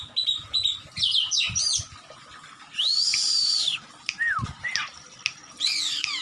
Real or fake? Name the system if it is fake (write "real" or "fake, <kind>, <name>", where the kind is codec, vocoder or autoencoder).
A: fake, vocoder, BigVGAN v2